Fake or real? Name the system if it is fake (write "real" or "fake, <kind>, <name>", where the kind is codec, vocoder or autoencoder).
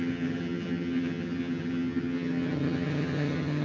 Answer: fake, vocoder, HiFi-GAN